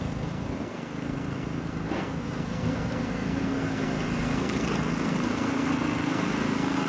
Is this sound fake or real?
fake